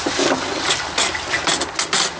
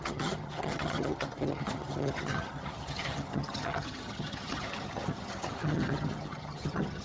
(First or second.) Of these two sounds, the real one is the first